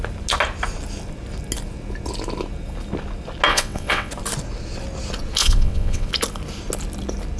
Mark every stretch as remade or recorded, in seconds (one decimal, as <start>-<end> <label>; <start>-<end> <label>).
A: 0.0-3.5 recorded; 3.5-4.1 remade; 4.1-5.4 recorded; 5.4-6.1 remade; 6.1-7.4 recorded